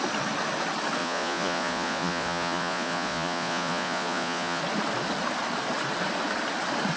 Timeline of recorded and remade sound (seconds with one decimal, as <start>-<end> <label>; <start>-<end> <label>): 0.0-1.0 recorded; 1.0-4.6 remade; 4.6-7.0 recorded